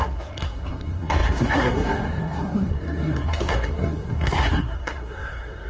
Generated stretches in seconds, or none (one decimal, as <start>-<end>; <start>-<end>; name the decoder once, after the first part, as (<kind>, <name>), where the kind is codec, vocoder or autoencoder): 0.0-5.7 (codec, SNAC)